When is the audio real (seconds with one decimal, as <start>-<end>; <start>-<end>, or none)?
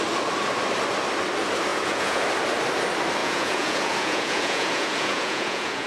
0.0-1.7; 2.2-3.2